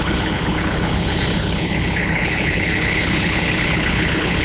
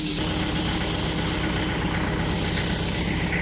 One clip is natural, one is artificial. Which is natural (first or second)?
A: second